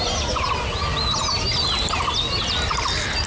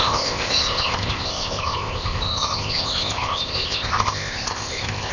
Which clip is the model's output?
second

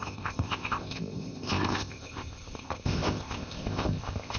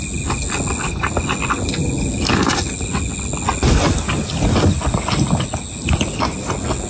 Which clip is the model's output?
first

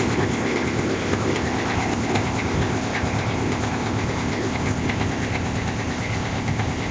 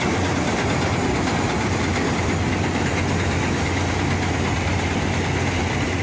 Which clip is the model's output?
first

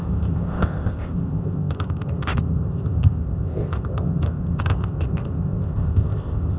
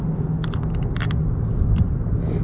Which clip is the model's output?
first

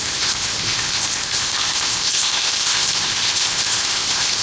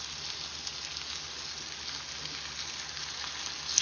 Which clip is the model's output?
first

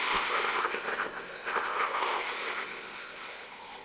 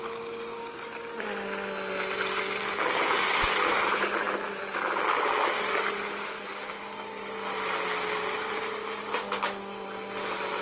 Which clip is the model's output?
first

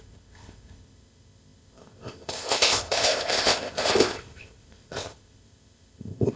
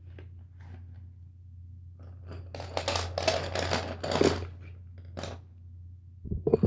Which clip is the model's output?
first